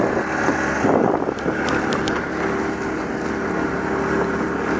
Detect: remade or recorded recorded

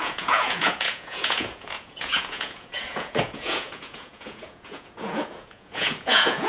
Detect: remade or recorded remade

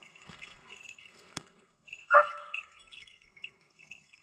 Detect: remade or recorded remade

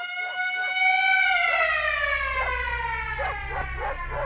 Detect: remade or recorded recorded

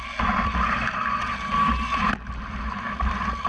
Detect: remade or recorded recorded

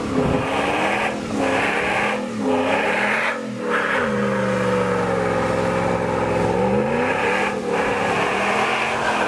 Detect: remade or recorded recorded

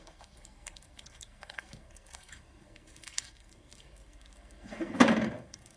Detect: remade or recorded remade